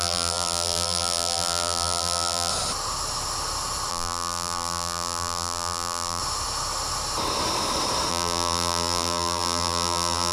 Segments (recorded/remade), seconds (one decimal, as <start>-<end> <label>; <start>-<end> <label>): 0.0-2.5 remade; 2.5-3.9 recorded; 3.9-6.2 remade; 6.2-8.1 recorded; 8.1-10.3 remade